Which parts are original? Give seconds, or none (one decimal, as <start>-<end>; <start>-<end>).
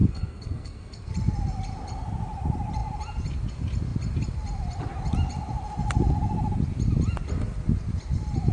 1.1-8.5